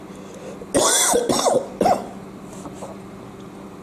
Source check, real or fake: real